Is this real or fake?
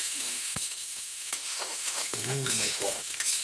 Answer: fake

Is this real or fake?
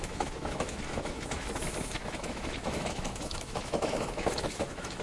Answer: fake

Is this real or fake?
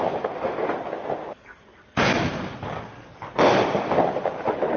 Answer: real